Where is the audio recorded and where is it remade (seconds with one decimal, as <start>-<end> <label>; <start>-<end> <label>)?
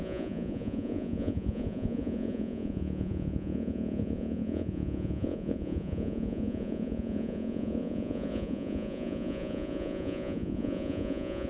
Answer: 0.0-11.5 remade